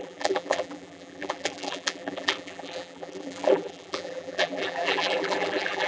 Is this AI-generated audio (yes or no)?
yes